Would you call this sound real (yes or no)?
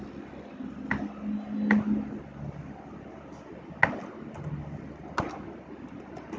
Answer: yes